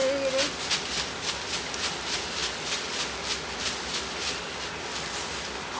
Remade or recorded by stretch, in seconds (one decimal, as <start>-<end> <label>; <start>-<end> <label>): 0.0-5.8 recorded